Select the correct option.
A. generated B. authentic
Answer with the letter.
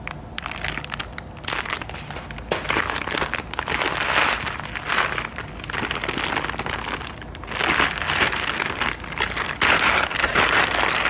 B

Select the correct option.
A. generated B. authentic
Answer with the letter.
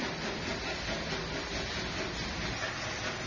B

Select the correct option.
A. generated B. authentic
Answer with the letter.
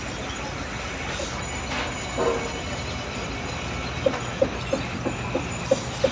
B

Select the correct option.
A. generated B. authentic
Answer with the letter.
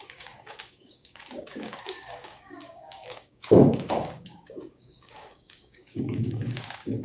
A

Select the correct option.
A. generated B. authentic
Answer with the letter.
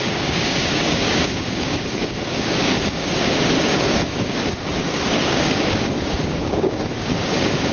A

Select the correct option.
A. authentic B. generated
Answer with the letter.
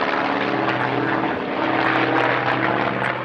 A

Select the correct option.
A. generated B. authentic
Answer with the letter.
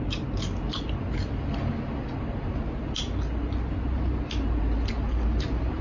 B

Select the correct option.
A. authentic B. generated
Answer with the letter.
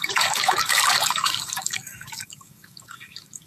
B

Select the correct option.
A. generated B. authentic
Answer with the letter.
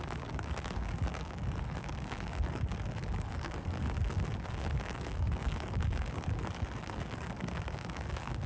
A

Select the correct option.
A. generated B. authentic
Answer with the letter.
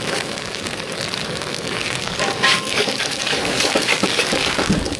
A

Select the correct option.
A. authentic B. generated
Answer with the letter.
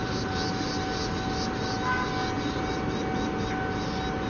A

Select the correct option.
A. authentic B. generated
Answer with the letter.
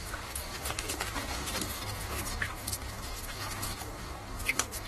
B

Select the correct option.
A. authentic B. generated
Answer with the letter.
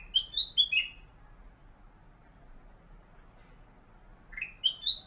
A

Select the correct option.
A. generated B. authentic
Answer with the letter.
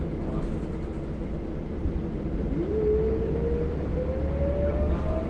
B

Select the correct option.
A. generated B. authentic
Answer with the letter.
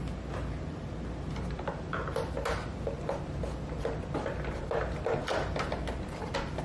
B